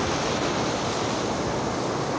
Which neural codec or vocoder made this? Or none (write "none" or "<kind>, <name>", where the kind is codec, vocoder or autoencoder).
none